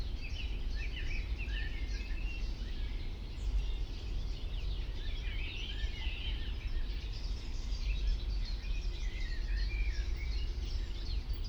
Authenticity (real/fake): real